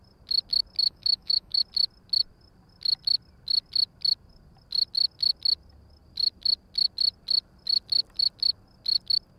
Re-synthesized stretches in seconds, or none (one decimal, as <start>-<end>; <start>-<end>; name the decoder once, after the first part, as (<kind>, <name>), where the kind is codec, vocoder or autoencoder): 0.8-1.6 (autoencoder, DAC-VAE)